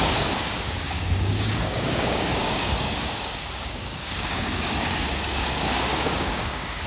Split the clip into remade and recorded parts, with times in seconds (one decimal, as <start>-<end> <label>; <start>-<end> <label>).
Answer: 0.0-6.9 remade

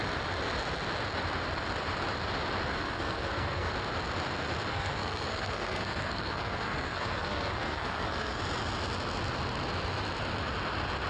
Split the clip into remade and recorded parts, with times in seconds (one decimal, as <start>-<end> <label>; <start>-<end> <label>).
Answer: 0.0-2.7 recorded; 2.7-3.7 remade; 3.7-4.7 recorded; 4.7-8.4 remade; 8.4-11.1 recorded

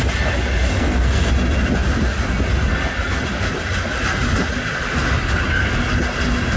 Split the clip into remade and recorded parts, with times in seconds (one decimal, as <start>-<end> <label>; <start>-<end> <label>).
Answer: 0.0-0.7 recorded; 0.7-1.3 remade; 1.3-6.6 recorded

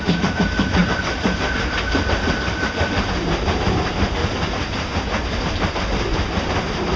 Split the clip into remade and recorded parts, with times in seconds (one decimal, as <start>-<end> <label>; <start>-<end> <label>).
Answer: 0.0-4.2 remade; 4.2-5.4 recorded; 5.4-6.1 remade; 6.1-7.0 recorded

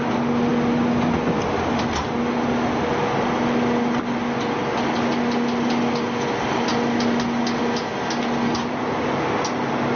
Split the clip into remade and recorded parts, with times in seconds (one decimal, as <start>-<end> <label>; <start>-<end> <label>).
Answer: 0.0-10.0 recorded

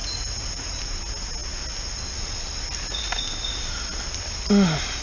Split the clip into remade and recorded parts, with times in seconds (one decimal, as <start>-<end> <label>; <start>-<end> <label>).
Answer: 0.0-0.8 remade; 0.8-5.0 recorded

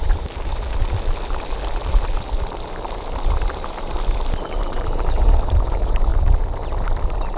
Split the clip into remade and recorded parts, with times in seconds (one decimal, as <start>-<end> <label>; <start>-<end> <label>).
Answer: 0.0-0.5 remade; 0.5-4.6 recorded; 4.6-6.1 remade; 6.1-7.4 recorded